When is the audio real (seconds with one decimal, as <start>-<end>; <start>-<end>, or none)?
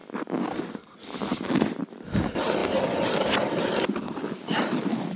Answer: 0.0-5.2